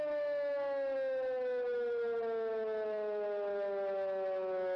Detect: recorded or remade recorded